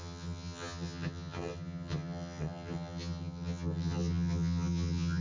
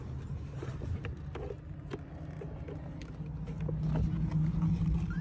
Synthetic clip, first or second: first